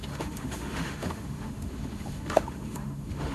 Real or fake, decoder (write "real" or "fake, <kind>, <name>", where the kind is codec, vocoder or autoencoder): fake, autoencoder, DAC-VAE